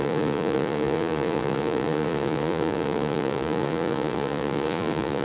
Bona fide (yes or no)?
no